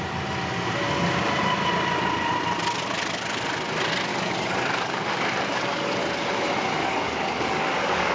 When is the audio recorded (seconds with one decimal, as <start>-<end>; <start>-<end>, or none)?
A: 0.0-4.1; 6.0-6.8